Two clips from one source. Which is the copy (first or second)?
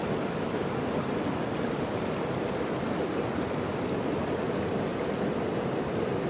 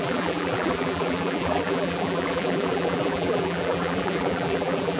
second